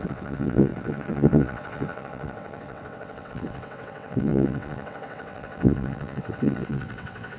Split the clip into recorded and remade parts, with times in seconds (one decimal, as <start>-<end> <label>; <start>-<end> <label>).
0.0-7.4 remade